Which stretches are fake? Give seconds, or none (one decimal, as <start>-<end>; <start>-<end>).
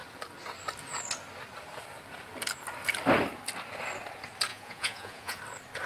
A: 4.5-5.4